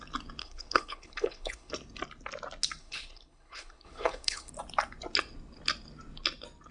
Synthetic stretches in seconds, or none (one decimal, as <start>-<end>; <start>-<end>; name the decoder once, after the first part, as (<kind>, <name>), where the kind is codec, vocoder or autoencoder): 0.4-1.7 (codec, HILCodec); 2.8-4.5